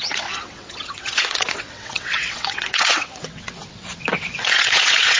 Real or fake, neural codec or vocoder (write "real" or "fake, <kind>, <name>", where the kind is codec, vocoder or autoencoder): fake, vocoder, WaveNeXt